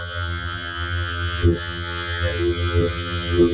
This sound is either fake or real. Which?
fake